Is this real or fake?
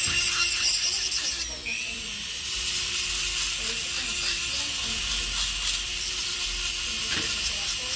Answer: fake